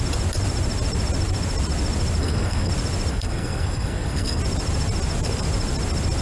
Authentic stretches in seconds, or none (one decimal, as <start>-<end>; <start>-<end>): 0.0-2.2; 2.7-3.1; 4.4-6.2